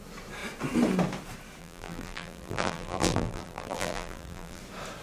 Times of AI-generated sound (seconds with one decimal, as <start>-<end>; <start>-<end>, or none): 1.6-4.6